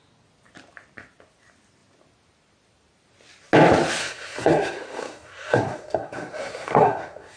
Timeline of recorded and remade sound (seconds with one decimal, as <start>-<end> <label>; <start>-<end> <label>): 0.0-4.0 recorded; 4.0-7.4 remade